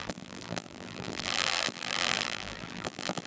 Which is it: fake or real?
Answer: fake